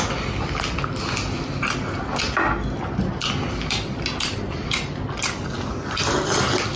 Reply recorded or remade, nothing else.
recorded